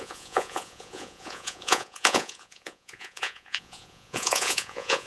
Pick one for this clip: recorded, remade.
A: remade